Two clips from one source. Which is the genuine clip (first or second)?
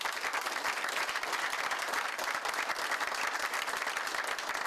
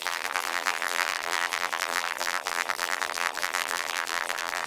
first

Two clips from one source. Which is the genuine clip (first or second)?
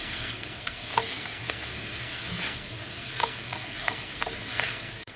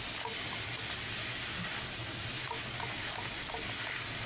second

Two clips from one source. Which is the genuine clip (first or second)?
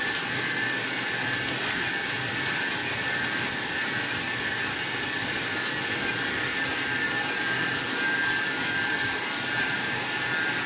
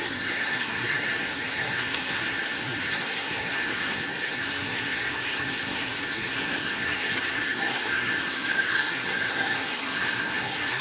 first